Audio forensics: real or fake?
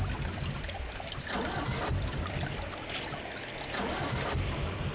real